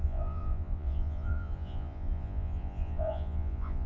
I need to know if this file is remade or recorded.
remade